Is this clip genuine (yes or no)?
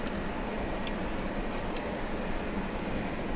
yes